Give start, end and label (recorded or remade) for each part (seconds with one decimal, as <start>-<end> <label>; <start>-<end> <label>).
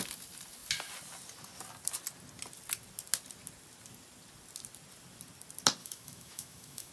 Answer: 0.0-5.8 recorded; 5.8-6.9 remade